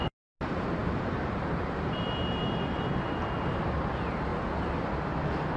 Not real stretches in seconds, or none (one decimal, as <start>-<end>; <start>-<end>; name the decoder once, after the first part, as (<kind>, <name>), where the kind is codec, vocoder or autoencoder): 0.8-3.2 (vocoder, BigVGAN v2)